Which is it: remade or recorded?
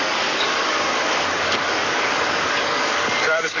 remade